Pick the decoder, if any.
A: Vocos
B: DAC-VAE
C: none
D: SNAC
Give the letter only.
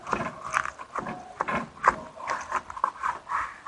C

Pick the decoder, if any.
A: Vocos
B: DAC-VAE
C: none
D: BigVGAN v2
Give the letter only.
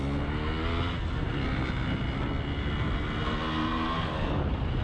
C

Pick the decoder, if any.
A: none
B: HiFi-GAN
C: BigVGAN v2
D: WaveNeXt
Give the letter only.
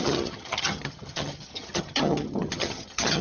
B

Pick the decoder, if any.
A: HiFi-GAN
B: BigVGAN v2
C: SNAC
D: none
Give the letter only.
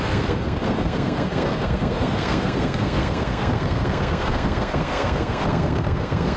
C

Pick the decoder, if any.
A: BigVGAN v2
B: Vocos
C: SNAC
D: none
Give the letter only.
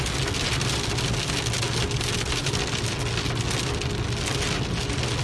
D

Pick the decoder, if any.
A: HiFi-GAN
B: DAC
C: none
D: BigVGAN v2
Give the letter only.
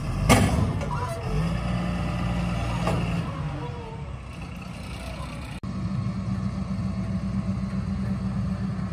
C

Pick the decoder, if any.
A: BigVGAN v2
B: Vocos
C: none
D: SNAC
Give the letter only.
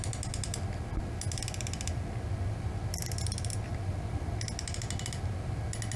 C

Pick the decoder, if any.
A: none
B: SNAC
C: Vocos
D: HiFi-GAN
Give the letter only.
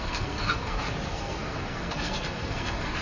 B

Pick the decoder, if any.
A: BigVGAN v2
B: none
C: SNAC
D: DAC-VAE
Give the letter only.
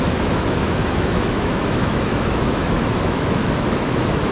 D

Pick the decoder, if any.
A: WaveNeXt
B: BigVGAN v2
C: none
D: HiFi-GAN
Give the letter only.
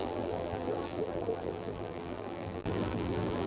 B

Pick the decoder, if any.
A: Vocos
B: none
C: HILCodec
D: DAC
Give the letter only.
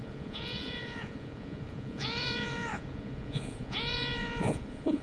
A